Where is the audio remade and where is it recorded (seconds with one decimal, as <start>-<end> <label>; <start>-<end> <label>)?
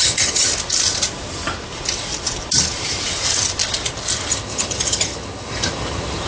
0.0-0.5 remade; 0.5-4.3 recorded; 4.3-6.3 remade